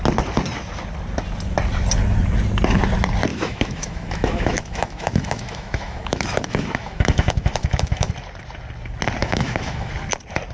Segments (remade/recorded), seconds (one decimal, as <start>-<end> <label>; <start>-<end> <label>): 0.0-3.3 recorded; 3.3-8.1 remade; 8.1-9.2 recorded; 9.2-9.9 remade; 9.9-10.5 recorded

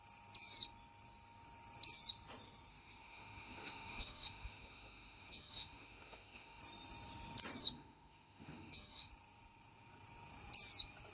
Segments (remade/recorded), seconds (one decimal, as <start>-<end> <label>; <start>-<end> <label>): 0.0-2.7 recorded; 2.7-6.6 remade; 6.6-7.6 recorded; 7.6-9.1 remade; 9.1-11.1 recorded

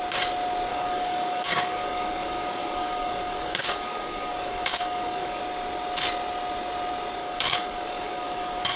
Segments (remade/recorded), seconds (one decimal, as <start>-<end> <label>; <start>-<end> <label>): 0.0-0.7 recorded; 0.7-5.4 remade; 5.4-7.2 recorded; 7.2-8.8 remade

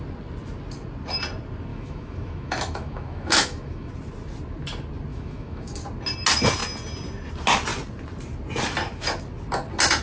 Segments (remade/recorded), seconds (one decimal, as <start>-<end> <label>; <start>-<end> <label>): 0.0-1.7 recorded; 1.7-3.9 remade; 3.9-5.1 recorded; 5.1-5.8 remade; 5.8-10.0 recorded

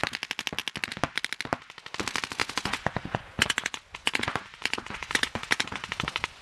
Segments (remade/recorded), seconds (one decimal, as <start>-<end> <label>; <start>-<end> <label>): 0.0-2.4 recorded; 2.4-6.4 remade